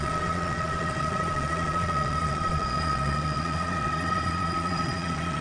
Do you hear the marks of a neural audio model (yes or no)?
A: yes